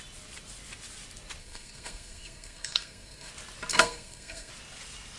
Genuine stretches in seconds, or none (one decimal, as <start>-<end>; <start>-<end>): 0.0-1.4; 3.3-3.7; 4.5-5.2